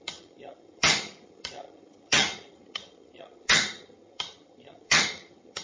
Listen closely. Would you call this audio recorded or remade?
remade